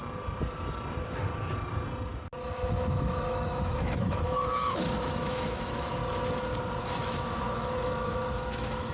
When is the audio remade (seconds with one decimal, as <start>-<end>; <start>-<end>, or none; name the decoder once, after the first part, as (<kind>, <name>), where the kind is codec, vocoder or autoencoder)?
2.4-6.0 (autoencoder, DAC-VAE); 6.8-8.9